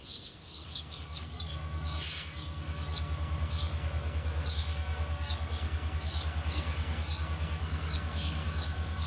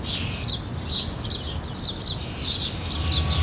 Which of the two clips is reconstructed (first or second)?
first